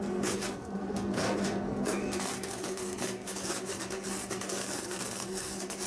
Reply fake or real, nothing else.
fake